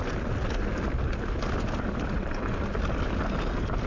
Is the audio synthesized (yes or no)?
no